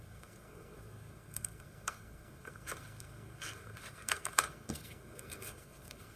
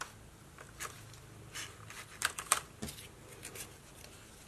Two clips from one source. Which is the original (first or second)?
second